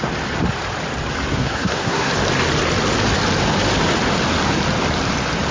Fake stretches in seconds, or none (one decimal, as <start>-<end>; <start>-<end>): 1.3-2.1